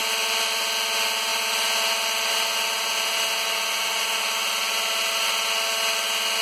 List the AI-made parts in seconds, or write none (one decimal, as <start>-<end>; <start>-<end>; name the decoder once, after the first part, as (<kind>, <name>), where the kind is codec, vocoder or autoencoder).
0.0-0.6 (vocoder, BigVGAN v2); 1.3-2.3